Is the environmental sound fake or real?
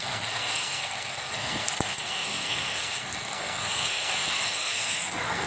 fake